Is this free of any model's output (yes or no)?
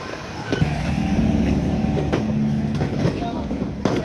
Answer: no